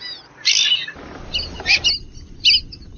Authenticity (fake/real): real